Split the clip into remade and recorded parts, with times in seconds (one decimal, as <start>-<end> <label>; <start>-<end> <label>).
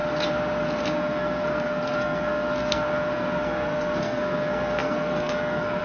0.0-0.8 recorded; 0.8-5.8 remade